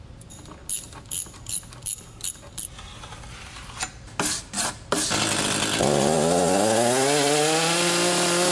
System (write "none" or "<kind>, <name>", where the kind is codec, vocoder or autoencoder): none